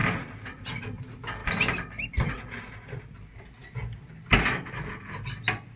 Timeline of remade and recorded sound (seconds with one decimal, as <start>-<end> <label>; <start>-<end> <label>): 0.0-0.8 remade; 0.8-5.8 recorded